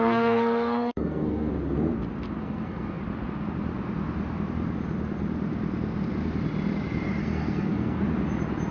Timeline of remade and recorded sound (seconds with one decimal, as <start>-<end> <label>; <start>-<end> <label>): 0.0-1.5 remade; 1.5-2.4 recorded; 2.4-3.0 remade; 3.0-7.2 recorded; 7.2-8.0 remade; 8.0-8.7 recorded